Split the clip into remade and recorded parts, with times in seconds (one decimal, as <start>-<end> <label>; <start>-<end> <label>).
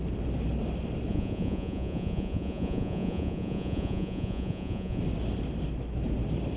0.0-1.1 recorded; 1.1-5.0 remade; 5.0-6.6 recorded